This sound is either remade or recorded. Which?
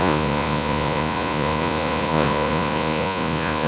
remade